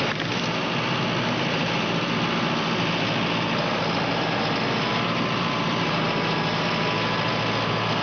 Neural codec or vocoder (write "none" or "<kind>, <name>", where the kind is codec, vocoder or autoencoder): none